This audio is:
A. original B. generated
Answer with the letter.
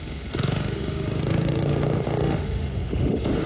B